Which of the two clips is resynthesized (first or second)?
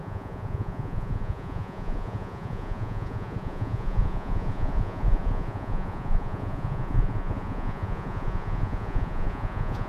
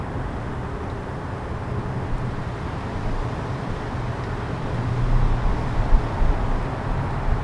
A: first